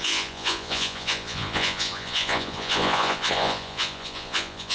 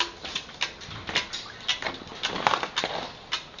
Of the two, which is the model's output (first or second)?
first